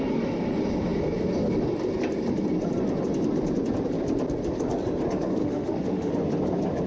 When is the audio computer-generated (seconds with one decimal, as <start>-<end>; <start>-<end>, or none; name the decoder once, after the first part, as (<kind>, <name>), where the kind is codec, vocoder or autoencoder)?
5.4-6.1 (autoencoder, DAC-VAE)